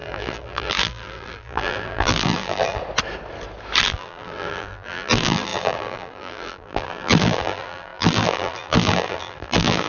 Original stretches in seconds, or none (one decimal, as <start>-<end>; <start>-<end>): 2.8-3.8